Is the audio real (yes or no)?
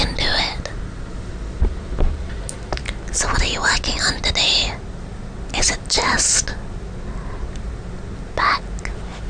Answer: yes